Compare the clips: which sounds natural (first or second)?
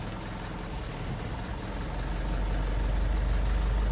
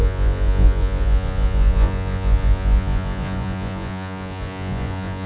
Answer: first